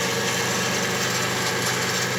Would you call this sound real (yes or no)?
yes